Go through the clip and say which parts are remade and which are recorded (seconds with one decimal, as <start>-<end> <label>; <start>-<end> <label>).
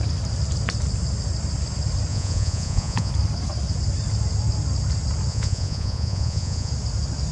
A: 0.0-2.1 recorded; 2.1-3.1 remade; 3.1-5.3 recorded; 5.3-6.7 remade; 6.7-7.3 recorded